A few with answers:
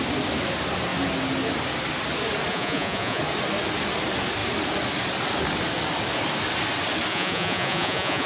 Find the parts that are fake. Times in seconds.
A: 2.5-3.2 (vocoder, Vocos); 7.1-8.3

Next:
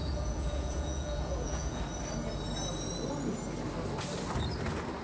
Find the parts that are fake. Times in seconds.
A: 0.0-1.8 (vocoder, Vocos)

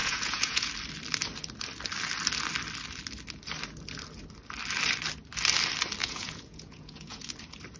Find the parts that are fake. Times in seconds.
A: 0.0-0.7 (vocoder, Vocos); 6.0-7.3

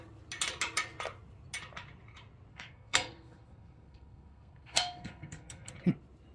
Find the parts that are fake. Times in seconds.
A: 2.5-5.7 (codec, SNAC)

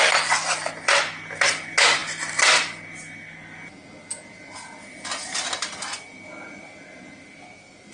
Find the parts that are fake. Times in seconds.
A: none

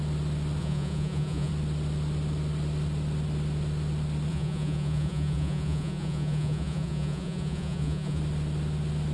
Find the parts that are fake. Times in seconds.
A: 0.6-1.5 (vocoder, Vocos); 4.3-8.2

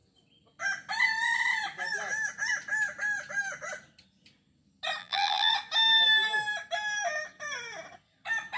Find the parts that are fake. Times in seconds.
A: 5.0-5.5 (vocoder, BigVGAN v2)

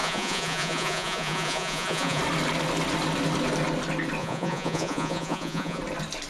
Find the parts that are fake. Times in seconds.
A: 0.0-2.2 (vocoder, Vocos); 4.2-5.8